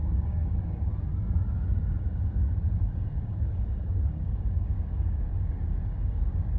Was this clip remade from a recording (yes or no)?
yes